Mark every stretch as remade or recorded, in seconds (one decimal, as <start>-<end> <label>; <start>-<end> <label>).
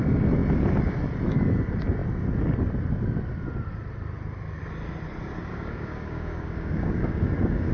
0.0-5.5 recorded; 5.5-7.7 remade